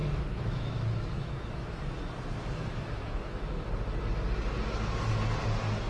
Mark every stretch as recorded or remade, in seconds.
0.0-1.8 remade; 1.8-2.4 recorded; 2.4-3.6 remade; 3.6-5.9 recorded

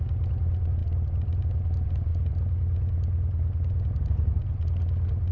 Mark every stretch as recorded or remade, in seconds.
0.0-5.3 recorded

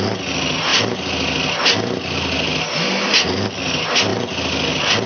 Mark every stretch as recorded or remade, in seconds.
0.0-5.1 recorded